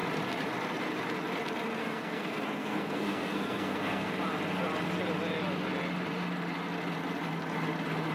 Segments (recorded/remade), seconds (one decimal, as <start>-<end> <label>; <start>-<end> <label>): 0.0-1.8 recorded; 1.8-4.1 remade; 4.1-8.1 recorded